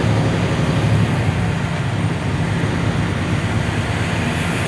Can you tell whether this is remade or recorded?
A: recorded